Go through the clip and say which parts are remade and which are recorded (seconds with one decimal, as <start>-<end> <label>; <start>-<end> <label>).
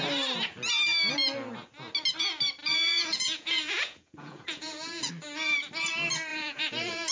0.0-2.6 recorded; 2.6-5.1 remade; 5.1-6.3 recorded; 6.3-7.1 remade